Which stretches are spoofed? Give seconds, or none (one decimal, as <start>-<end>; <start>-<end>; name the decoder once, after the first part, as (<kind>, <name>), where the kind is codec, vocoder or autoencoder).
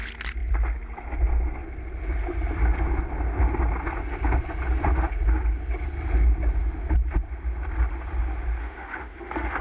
8.6-9.6 (autoencoder, DAC-VAE)